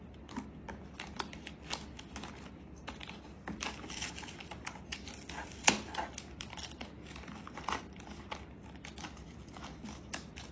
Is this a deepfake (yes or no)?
no